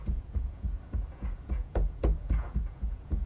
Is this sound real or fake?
fake